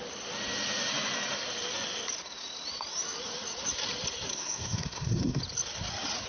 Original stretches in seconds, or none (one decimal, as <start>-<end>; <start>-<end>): 0.0-4.3; 5.4-6.3